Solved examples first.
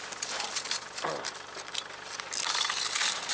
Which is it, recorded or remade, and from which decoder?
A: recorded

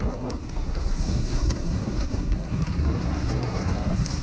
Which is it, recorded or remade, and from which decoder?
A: remade, codec, SNAC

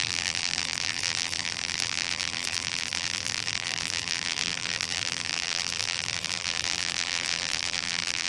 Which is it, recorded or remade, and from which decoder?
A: remade, vocoder, BigVGAN v2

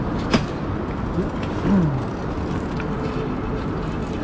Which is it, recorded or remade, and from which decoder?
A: recorded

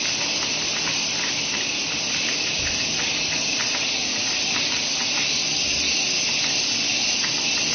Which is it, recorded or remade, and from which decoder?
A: recorded